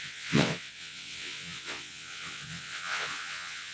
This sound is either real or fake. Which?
fake